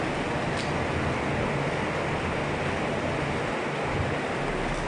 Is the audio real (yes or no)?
yes